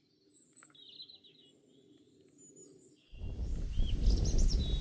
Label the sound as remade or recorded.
recorded